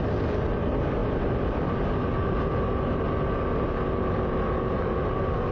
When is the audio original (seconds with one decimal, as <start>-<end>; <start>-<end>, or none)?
0.0-5.5